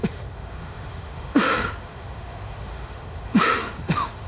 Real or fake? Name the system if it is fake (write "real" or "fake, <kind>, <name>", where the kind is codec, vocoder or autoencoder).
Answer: fake, autoencoder, DAC-VAE